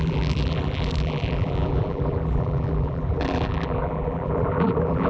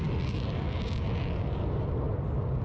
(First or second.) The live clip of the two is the second